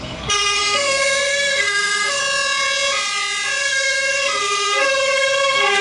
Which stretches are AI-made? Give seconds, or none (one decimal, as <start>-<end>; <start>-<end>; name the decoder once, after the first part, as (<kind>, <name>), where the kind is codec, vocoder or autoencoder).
0.0-2.2 (codec, SNAC); 3.6-5.8